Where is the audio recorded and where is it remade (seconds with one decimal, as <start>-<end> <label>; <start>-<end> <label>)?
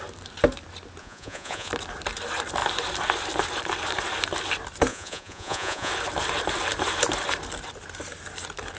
0.0-1.0 recorded; 1.0-1.7 remade; 1.7-4.9 recorded; 4.9-5.9 remade; 5.9-8.8 recorded